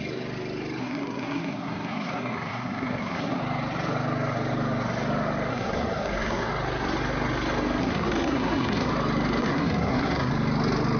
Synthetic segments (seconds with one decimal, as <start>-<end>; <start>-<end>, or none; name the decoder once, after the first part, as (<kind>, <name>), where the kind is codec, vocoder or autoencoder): 0.8-3.4 (codec, SNAC); 5.5-6.5; 7.8-8.9; 9.4-10.3